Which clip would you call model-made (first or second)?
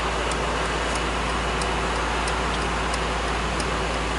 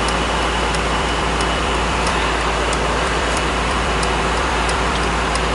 second